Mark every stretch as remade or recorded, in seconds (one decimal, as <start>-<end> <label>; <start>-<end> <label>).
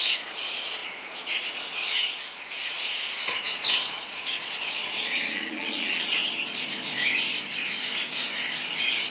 0.0-6.2 remade; 6.2-9.1 recorded